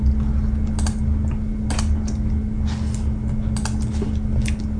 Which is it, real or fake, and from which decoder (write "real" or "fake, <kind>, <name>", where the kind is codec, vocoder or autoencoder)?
real